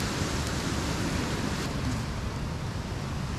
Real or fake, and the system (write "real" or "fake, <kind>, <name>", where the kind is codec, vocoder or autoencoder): real